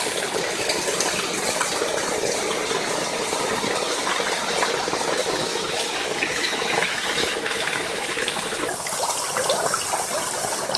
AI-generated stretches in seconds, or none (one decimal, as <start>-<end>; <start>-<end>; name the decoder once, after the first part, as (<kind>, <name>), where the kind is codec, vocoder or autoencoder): 5.2-8.3 (autoencoder, DAC-VAE)

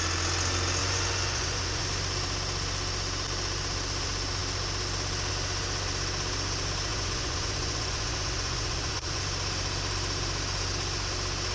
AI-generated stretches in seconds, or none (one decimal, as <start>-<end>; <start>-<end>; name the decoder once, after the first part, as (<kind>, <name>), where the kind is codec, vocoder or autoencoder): 0.8-1.8 (vocoder, Vocos); 6.9-9.2